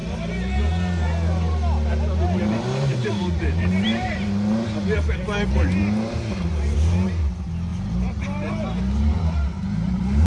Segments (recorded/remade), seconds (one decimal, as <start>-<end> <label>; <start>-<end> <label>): 0.0-2.4 recorded; 2.4-10.3 remade